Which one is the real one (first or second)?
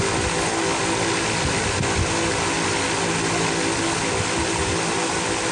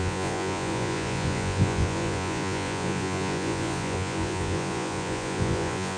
first